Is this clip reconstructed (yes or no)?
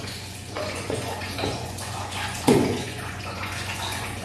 yes